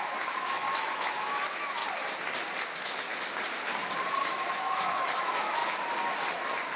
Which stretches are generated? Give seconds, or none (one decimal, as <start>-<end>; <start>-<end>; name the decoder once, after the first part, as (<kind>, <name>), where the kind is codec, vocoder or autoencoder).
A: 0.0-1.8 (autoencoder, DAC-VAE); 2.6-3.1; 4.2-5.6